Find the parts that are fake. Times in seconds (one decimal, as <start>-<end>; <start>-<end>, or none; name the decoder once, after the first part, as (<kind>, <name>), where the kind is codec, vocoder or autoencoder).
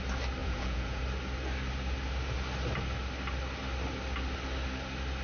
0.4-1.0 (vocoder, Vocos)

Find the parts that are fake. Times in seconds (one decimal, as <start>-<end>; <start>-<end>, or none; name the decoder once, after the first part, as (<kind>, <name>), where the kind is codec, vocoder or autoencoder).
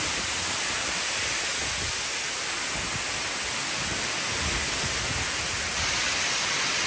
none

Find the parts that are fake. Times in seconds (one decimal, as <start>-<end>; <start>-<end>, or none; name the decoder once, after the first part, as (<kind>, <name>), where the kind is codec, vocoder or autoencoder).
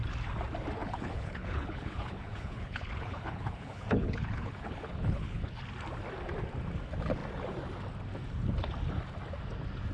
0.8-5.6 (codec, HILCodec)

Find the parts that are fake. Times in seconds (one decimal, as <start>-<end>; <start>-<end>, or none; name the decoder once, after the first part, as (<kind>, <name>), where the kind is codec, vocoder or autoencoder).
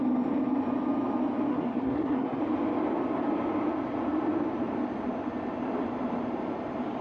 1.5-2.4 (codec, SNAC)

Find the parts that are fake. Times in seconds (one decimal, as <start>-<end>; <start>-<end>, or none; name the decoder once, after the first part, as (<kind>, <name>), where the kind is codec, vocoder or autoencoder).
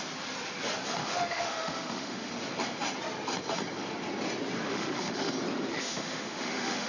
1.0-2.3 (autoencoder, DAC-VAE); 4.7-5.3; 5.7-6.9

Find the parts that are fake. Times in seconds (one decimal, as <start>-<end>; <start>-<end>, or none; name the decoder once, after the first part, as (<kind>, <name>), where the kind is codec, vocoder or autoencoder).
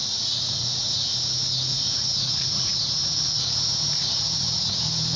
0.0-1.1 (vocoder, Vocos); 1.7-4.8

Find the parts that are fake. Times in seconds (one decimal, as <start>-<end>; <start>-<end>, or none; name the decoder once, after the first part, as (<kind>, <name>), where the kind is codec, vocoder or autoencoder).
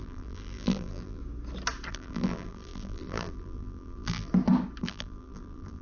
0.0-1.2 (vocoder, BigVGAN v2); 1.9-4.3; 4.8-5.8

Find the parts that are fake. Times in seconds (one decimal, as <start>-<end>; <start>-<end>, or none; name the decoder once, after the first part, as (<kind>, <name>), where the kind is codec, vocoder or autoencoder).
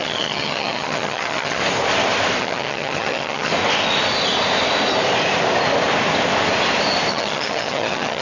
0.0-1.6 (vocoder, HiFi-GAN); 2.4-3.5; 7.1-8.2